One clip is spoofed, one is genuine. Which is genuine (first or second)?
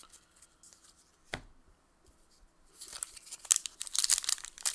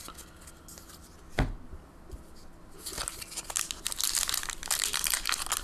second